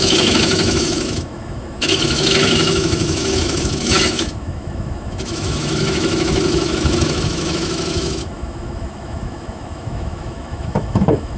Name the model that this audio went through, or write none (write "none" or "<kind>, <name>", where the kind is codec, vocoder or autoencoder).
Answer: autoencoder, DAC-VAE